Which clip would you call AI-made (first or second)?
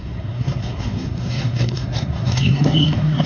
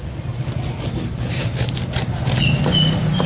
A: first